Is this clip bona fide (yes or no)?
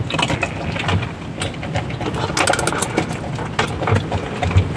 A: yes